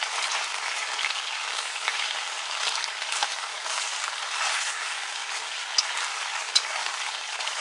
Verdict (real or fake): fake